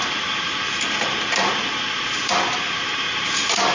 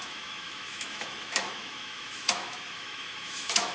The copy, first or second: second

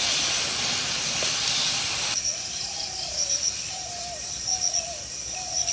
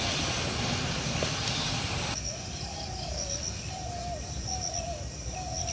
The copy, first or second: first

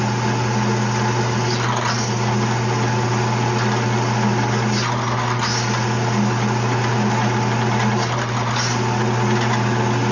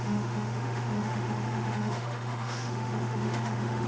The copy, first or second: second